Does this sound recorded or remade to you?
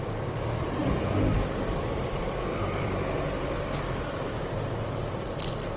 remade